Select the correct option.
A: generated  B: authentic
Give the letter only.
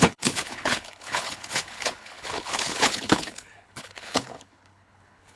A